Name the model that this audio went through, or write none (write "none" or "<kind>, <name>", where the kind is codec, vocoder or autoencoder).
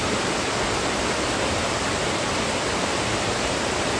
none